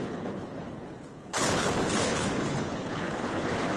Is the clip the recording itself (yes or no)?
no